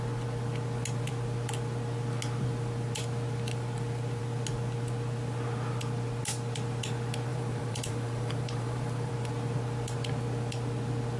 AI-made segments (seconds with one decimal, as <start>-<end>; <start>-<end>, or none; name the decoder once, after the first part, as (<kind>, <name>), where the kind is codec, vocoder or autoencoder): 7.3-9.1 (vocoder, BigVGAN v2)